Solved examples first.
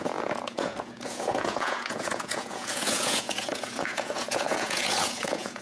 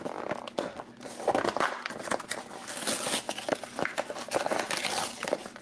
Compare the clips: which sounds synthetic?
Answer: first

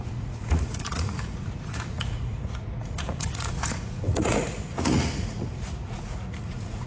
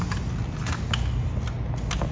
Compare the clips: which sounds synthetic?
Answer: first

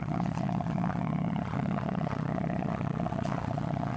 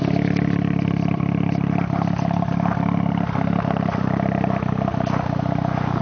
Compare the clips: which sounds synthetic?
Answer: first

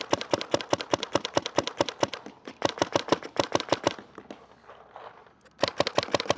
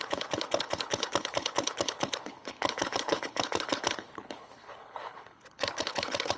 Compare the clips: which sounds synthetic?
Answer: second